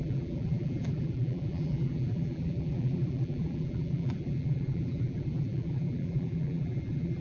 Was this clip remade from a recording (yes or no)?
yes